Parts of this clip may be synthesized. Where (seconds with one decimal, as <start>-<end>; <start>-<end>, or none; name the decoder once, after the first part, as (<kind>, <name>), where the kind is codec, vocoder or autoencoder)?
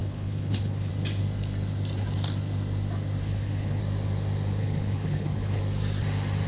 0.0-0.9 (codec, HILCodec); 3.2-3.8; 4.6-5.6